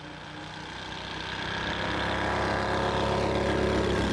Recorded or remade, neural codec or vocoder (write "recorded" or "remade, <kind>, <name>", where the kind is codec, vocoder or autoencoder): recorded